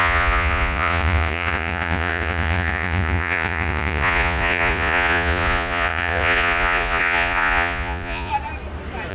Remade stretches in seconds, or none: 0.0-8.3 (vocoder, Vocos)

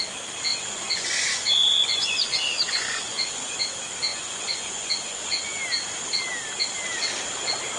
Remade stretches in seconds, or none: 0.5-3.6 (vocoder, Vocos); 4.1-5.6

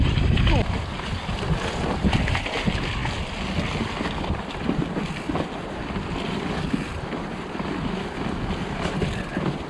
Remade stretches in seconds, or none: none

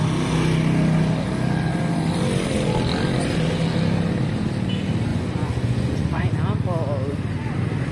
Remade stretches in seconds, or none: 5.1-6.3 (vocoder, Vocos)

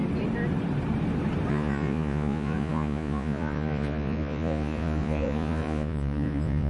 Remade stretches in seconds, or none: 1.5-6.7 (vocoder, Vocos)

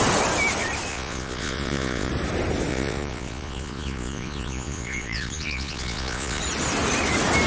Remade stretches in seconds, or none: 0.9-2.1 (vocoder, Vocos); 2.7-6.4